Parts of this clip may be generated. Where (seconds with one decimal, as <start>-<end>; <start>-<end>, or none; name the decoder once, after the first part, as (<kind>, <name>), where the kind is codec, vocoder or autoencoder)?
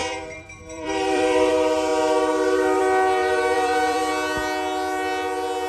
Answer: 0.0-1.5 (vocoder, BigVGAN v2); 3.2-4.1